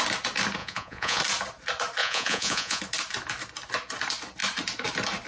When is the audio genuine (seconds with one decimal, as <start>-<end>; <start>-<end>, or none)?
0.0-0.6; 1.2-2.0; 2.8-5.3